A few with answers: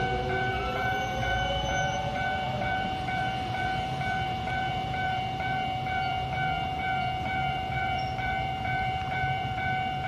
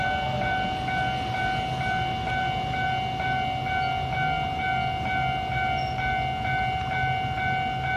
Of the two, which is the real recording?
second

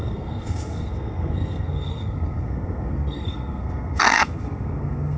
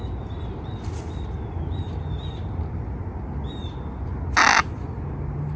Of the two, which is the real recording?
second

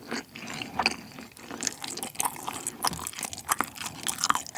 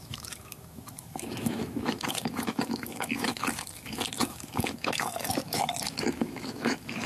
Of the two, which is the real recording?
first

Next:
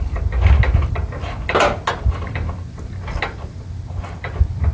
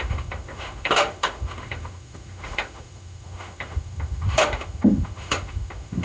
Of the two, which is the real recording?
first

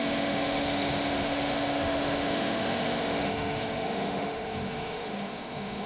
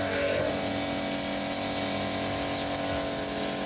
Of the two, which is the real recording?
second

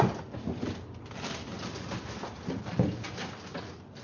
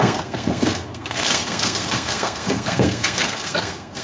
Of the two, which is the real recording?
first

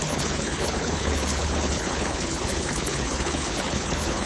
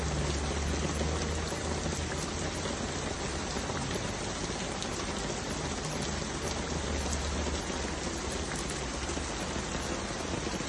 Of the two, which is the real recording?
second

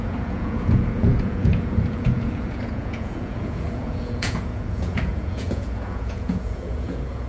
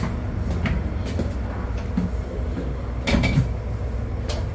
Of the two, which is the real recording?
second